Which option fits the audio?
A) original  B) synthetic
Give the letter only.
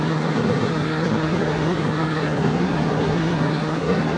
B